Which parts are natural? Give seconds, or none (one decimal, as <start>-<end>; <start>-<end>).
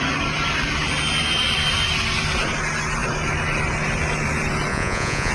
0.0-4.7